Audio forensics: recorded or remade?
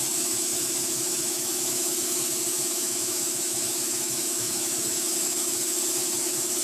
remade